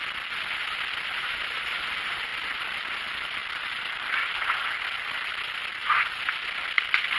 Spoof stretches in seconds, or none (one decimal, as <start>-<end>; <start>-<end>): 2.3-2.9; 3.4-4.3